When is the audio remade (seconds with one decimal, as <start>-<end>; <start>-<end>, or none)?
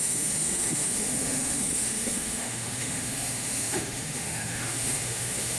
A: 0.0-5.6